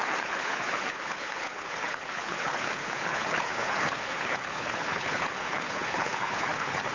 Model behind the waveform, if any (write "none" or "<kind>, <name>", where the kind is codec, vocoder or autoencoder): codec, HILCodec